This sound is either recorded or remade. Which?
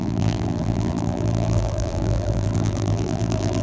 remade